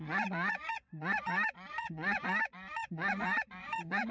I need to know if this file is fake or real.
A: fake